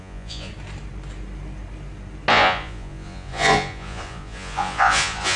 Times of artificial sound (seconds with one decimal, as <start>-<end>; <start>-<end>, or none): 0.0-0.5; 2.3-5.4